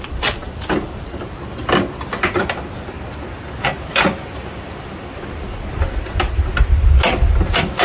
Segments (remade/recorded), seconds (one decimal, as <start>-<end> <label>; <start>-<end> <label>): 0.0-7.8 recorded